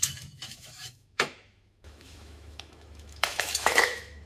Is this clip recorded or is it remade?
remade